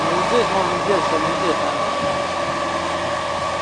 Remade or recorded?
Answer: recorded